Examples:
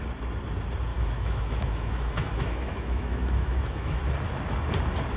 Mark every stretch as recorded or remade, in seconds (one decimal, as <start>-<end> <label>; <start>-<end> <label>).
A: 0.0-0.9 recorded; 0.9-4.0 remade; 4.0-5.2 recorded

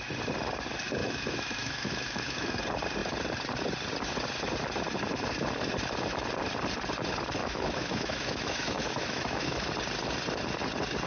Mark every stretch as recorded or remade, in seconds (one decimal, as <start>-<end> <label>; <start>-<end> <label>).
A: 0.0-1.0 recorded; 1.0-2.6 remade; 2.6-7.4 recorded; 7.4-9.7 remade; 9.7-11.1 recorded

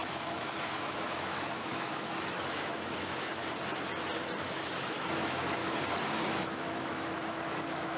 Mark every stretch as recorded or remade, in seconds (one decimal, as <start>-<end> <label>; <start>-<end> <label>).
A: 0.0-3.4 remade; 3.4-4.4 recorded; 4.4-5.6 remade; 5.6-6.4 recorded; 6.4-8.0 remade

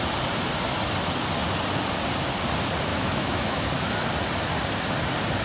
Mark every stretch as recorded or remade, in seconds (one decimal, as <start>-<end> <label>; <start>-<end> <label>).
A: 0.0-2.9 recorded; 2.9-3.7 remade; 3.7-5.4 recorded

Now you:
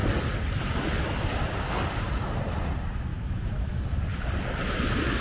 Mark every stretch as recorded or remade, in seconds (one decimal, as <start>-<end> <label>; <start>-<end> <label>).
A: 0.0-3.1 recorded; 3.1-3.7 remade; 3.7-5.2 recorded